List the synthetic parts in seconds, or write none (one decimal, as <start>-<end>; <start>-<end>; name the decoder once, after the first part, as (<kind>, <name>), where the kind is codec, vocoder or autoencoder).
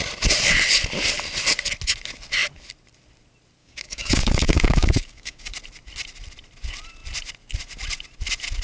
3.6-5.5 (codec, DAC)